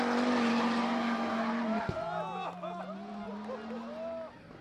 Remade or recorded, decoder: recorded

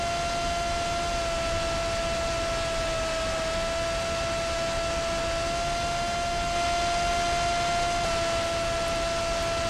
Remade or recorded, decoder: recorded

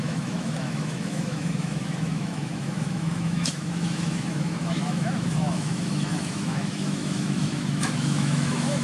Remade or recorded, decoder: remade, autoencoder, DAC-VAE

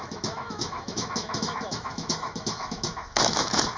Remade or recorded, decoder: remade, autoencoder, DAC-VAE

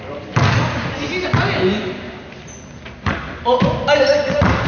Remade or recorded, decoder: recorded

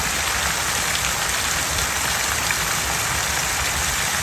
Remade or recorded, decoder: recorded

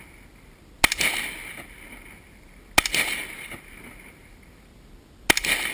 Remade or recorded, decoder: recorded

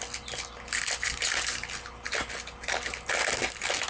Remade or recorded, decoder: recorded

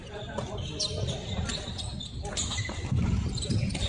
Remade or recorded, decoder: recorded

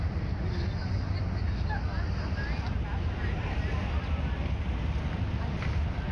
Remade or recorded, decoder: recorded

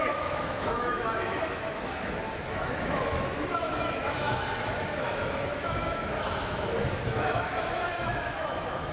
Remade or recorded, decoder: remade, autoencoder, DAC-VAE